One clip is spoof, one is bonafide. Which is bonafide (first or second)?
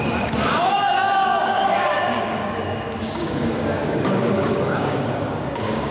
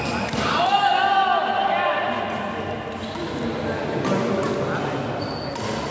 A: second